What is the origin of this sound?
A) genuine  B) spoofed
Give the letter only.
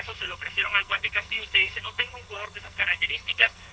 B